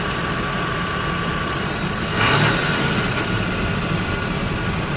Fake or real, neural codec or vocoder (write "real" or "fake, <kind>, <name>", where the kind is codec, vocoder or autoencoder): real